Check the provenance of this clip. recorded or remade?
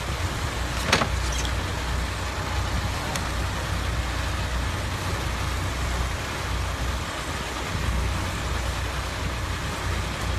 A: recorded